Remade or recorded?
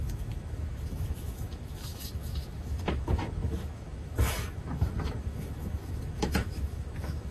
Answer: remade